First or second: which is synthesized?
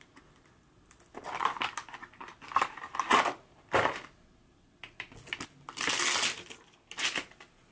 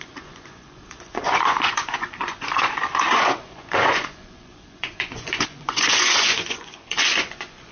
second